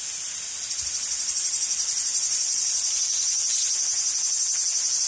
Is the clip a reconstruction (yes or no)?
no